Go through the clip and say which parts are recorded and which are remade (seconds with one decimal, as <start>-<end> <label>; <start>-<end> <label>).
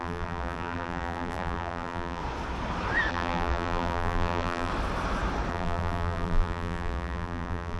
0.0-2.2 remade; 2.2-3.1 recorded; 3.1-4.7 remade; 4.7-5.5 recorded; 5.5-7.8 remade